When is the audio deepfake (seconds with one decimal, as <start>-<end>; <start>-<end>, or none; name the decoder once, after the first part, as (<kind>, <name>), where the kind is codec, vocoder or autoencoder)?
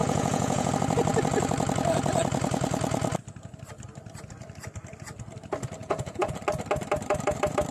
0.0-0.7 (vocoder, Vocos); 5.8-6.4